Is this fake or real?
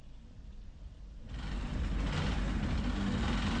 real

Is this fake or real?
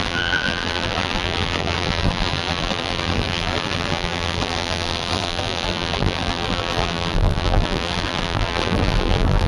fake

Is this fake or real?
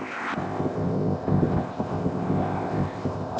fake